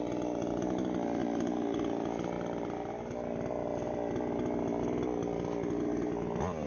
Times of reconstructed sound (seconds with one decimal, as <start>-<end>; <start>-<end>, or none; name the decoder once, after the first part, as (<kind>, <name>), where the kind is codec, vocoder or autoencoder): none